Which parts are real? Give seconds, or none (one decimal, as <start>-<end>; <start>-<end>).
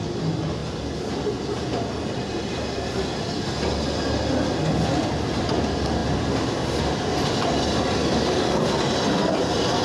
0.0-8.0; 8.5-9.8